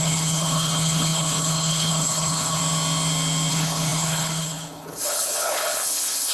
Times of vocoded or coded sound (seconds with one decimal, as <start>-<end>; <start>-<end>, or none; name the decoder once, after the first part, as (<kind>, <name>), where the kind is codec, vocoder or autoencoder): 0.0-2.6 (codec, HILCodec); 3.5-6.3